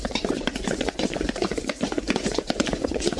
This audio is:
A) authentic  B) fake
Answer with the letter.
B